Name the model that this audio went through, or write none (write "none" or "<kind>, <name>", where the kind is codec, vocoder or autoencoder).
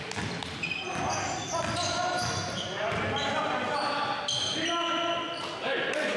none